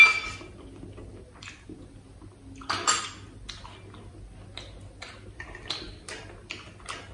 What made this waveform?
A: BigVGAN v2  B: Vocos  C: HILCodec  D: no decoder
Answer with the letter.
D